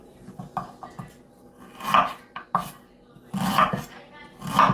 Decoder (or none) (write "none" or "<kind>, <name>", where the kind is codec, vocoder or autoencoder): none